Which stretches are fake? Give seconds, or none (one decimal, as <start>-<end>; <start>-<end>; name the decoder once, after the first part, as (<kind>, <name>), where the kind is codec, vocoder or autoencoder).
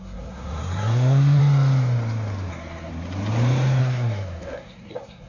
0.0-1.4 (codec, SNAC); 2.5-2.9; 3.8-5.3